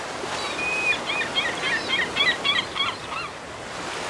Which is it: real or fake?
real